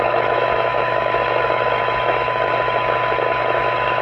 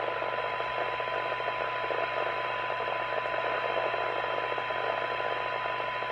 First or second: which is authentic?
second